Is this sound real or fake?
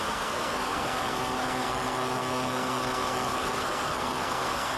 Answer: fake